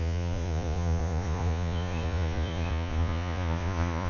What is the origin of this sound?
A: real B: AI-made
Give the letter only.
B